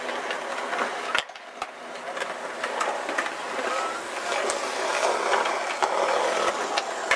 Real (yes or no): yes